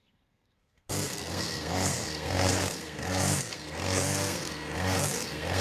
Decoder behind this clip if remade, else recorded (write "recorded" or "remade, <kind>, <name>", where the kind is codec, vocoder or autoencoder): remade, codec, SNAC